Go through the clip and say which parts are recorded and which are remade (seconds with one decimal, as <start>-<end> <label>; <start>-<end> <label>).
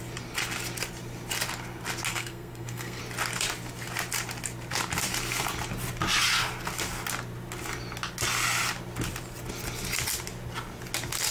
0.0-2.1 recorded; 2.1-3.0 remade; 3.0-11.3 recorded